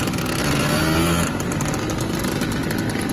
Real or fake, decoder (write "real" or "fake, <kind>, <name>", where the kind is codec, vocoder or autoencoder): real